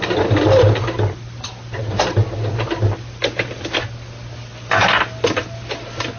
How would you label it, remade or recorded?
recorded